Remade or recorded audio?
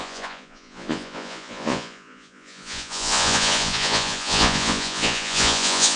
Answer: remade